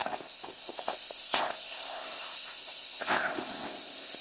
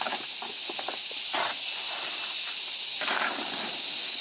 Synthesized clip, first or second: first